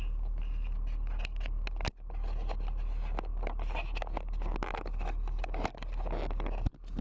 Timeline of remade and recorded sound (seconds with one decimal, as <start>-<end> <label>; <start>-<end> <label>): 0.0-7.0 recorded